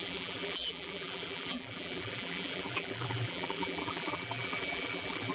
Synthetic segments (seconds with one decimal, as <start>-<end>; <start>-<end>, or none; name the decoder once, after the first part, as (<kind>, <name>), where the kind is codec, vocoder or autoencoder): 0.0-5.3 (vocoder, BigVGAN v2)